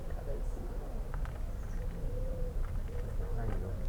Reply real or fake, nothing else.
real